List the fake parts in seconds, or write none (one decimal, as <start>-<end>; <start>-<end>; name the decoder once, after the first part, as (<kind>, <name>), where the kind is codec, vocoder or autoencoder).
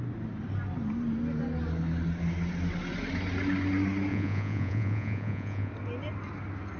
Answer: 4.1-5.7 (vocoder, Vocos)